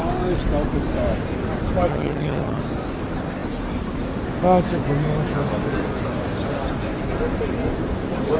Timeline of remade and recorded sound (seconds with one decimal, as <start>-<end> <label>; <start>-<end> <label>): 0.0-1.9 recorded; 1.9-2.6 remade; 2.6-8.4 recorded